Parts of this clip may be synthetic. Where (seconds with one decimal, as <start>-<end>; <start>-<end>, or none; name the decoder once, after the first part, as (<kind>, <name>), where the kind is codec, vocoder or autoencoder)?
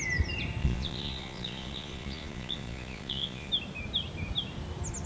0.6-3.5 (vocoder, Vocos)